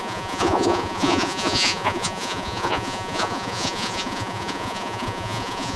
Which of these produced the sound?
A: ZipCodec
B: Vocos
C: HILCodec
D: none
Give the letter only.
B